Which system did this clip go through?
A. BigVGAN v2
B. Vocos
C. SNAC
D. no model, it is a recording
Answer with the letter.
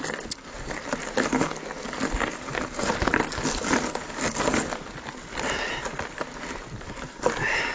D